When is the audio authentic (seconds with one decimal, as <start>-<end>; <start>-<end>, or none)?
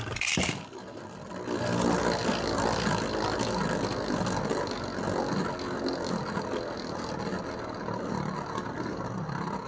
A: 0.0-9.7